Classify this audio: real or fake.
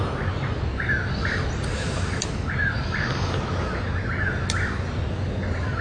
real